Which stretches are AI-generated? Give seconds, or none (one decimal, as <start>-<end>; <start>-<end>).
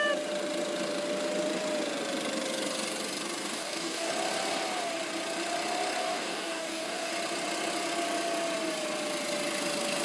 3.4-4.1; 6.0-7.1